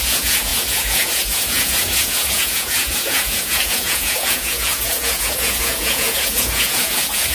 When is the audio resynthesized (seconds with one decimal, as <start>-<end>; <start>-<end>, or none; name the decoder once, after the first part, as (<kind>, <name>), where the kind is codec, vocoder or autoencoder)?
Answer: 0.0-7.3 (vocoder, Vocos)